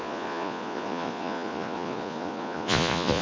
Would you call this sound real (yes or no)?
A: no